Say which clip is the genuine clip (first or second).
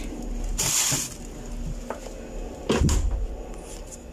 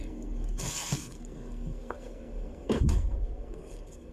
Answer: first